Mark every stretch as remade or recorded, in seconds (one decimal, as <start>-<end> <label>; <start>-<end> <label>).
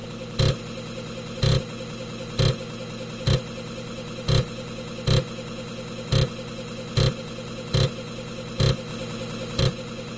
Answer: 0.0-8.9 remade; 8.9-9.6 recorded; 9.6-10.2 remade